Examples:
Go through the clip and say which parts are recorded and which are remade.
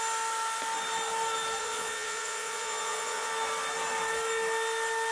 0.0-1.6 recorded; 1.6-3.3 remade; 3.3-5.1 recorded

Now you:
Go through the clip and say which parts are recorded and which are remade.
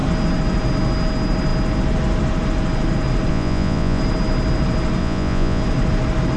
0.0-3.3 recorded; 3.3-4.0 remade; 4.0-5.0 recorded; 5.0-5.6 remade; 5.6-6.4 recorded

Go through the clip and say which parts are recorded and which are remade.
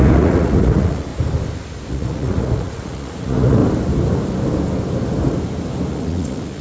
0.0-1.1 remade; 1.1-1.9 recorded; 1.9-3.6 remade; 3.6-5.9 recorded; 5.9-6.6 remade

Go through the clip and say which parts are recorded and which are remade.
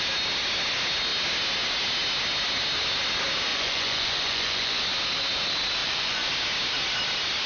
0.0-3.5 recorded; 3.5-4.8 remade; 4.8-5.8 recorded; 5.8-6.3 remade; 6.3-7.5 recorded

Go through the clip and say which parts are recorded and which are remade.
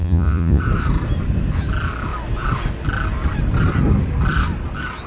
0.0-0.6 remade; 0.6-5.1 recorded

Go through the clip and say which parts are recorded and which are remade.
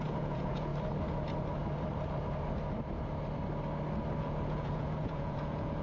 0.0-0.7 remade; 0.7-4.2 recorded; 4.2-5.8 remade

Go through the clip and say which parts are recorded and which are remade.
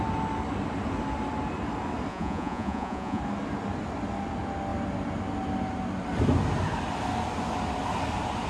0.0-2.1 recorded; 2.1-3.2 remade; 3.2-8.5 recorded